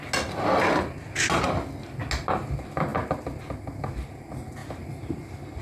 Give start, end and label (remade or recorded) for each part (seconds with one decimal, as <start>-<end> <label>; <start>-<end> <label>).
0.0-4.6 recorded; 4.6-5.6 remade